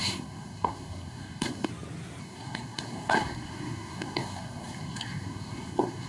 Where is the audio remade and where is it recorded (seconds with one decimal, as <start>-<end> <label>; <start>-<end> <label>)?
0.0-1.7 remade; 1.7-2.2 recorded; 2.2-6.1 remade